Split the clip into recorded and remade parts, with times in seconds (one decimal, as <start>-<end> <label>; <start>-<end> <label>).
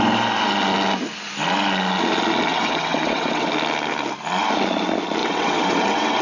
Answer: 0.0-2.5 recorded; 2.5-3.5 remade; 3.5-5.2 recorded; 5.2-6.2 remade